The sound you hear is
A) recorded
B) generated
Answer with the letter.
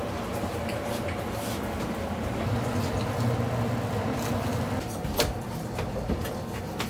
A